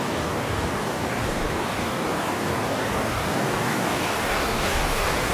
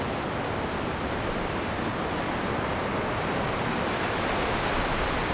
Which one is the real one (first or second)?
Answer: second